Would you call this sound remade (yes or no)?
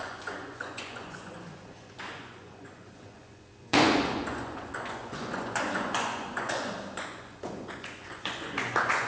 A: yes